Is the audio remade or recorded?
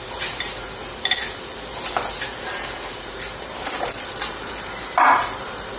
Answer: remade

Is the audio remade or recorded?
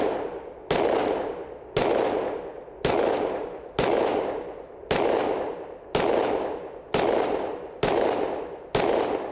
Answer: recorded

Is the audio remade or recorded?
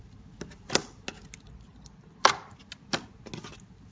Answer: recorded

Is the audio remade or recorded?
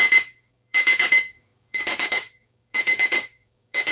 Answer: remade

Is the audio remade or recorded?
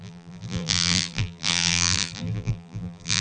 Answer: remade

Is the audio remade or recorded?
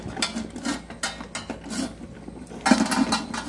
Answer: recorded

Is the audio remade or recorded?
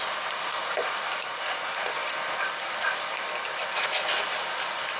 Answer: recorded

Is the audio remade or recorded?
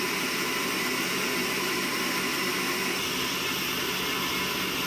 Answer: recorded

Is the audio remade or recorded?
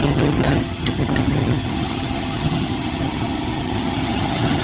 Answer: remade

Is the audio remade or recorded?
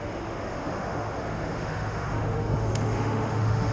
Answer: remade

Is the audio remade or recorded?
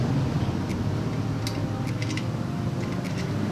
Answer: recorded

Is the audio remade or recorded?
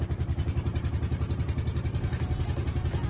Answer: recorded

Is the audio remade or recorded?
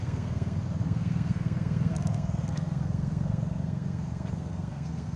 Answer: remade